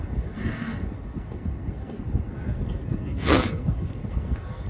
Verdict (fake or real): fake